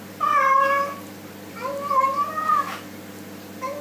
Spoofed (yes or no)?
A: no